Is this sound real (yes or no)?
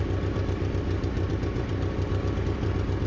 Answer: no